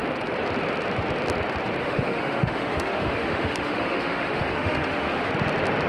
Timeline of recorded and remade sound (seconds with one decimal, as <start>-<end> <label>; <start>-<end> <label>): 0.0-1.8 recorded; 1.8-5.3 remade; 5.3-5.9 recorded